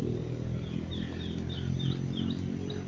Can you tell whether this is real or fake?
real